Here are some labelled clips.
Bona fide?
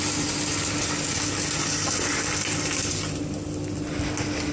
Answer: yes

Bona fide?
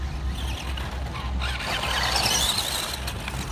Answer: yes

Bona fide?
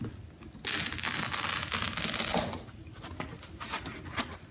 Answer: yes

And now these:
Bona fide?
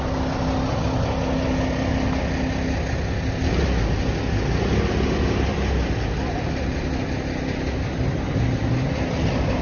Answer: yes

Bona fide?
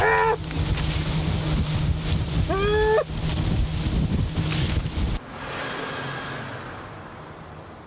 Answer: yes